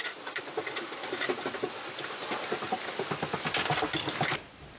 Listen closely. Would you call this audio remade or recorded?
recorded